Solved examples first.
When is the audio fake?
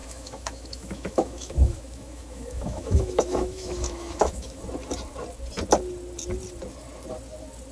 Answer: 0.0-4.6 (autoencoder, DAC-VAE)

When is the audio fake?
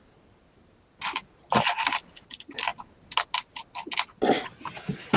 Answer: none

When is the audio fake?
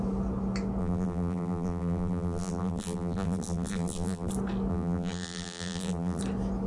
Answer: 0.8-4.3 (vocoder, BigVGAN v2); 4.7-6.2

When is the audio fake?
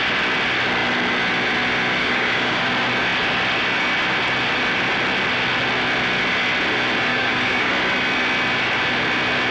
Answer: 2.0-2.6 (codec, DAC); 7.1-7.7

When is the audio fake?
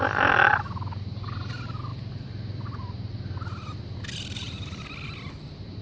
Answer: none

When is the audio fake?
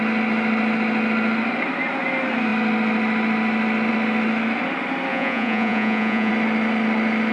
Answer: 5.1-6.3 (vocoder, Vocos)